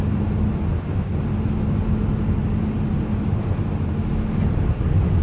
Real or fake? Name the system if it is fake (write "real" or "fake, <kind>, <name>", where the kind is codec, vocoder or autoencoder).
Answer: real